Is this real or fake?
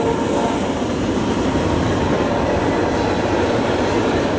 fake